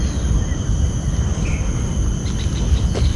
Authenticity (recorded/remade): recorded